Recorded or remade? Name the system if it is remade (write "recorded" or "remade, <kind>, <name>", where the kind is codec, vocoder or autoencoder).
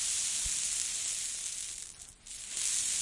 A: recorded